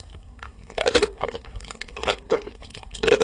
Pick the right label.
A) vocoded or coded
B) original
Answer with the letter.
A